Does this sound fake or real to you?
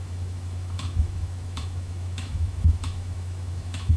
fake